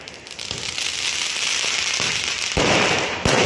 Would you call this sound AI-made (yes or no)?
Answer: no